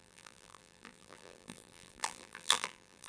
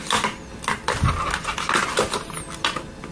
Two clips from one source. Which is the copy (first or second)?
first